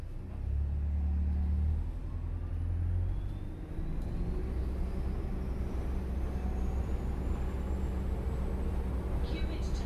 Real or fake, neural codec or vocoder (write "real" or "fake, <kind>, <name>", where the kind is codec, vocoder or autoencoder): real